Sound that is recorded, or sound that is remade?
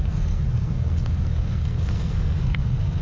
remade